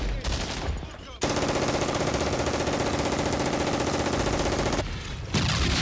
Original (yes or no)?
yes